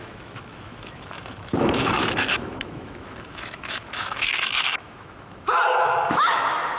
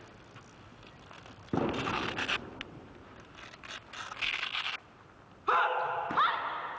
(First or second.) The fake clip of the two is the first